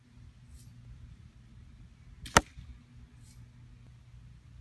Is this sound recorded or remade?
recorded